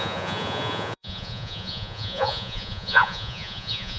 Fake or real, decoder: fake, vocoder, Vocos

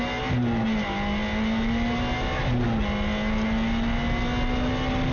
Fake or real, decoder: real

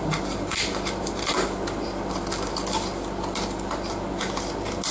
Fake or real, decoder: real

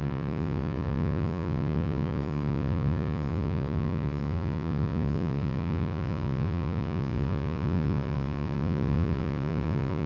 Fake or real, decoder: fake, vocoder, Vocos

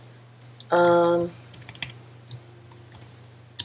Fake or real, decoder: real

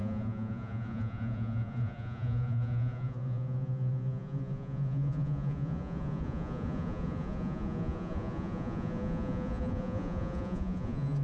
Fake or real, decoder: fake, vocoder, Vocos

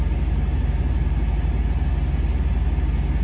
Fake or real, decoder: real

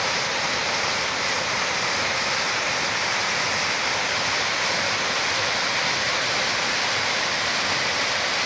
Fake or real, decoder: real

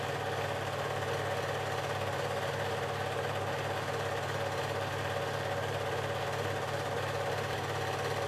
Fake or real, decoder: real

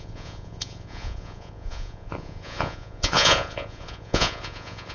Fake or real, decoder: fake, vocoder, Vocos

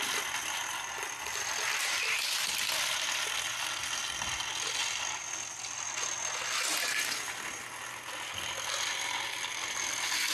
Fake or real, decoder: real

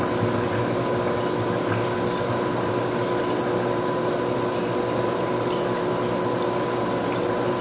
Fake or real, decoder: real